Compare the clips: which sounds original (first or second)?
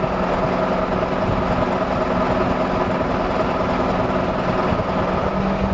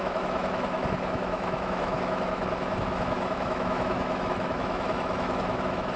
first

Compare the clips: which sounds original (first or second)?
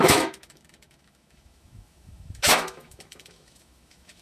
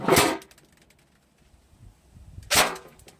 second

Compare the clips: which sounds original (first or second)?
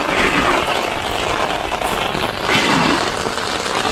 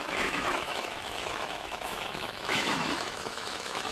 first